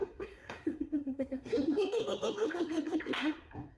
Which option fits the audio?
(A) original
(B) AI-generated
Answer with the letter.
B